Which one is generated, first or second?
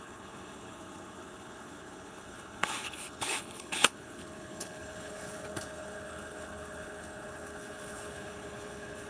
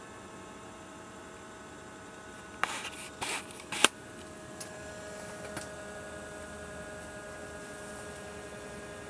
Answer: first